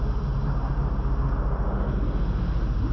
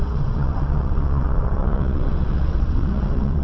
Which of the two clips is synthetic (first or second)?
second